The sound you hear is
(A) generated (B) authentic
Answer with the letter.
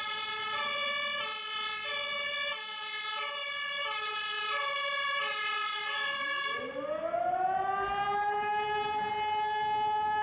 B